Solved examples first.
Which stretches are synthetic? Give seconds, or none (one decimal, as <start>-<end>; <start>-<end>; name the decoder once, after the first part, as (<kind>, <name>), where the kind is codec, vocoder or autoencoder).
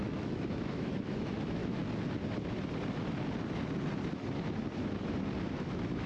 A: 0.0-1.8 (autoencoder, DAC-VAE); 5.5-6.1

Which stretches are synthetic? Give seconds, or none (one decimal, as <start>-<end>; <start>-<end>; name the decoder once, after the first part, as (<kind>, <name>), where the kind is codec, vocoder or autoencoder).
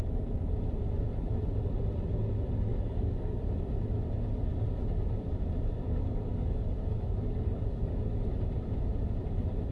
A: 2.7-3.4 (codec, DAC); 5.8-8.3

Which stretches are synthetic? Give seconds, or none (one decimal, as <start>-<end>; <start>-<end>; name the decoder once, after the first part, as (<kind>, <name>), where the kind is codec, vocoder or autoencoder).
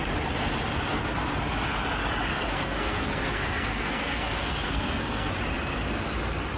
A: 2.3-5.3 (codec, SNAC)